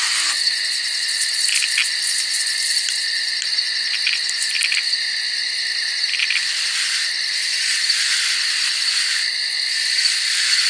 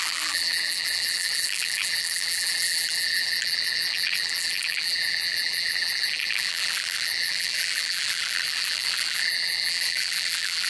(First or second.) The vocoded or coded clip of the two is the second